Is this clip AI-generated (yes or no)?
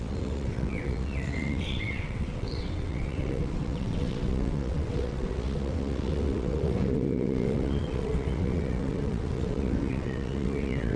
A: yes